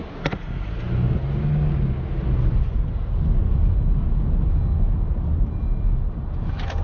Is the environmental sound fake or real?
real